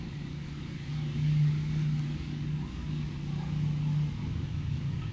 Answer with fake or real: fake